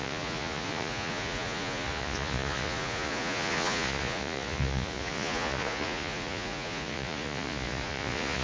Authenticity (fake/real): fake